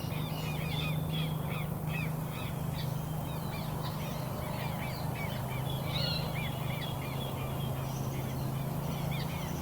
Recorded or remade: recorded